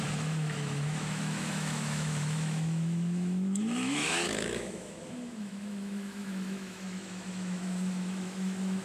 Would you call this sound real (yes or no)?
no